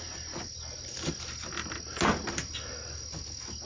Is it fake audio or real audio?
real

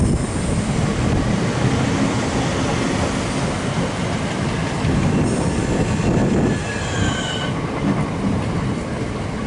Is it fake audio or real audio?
real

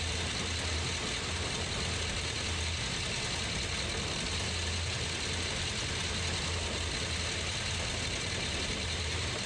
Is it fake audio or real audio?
real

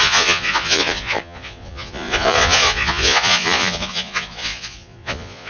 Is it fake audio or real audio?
fake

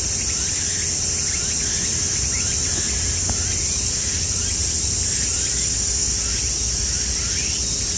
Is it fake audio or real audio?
real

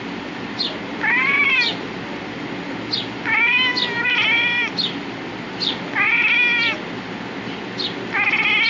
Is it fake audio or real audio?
real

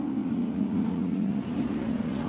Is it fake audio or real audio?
fake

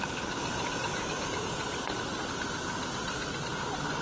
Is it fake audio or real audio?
real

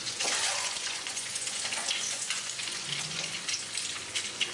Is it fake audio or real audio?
fake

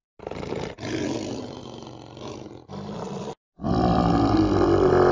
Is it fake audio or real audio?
real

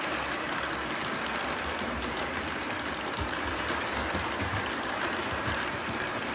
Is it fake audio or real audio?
real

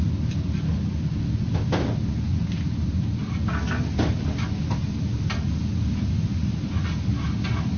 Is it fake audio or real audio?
real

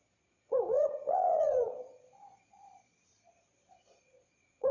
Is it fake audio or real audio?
fake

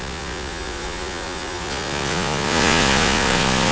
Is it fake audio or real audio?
fake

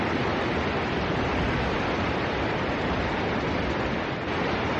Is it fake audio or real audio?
real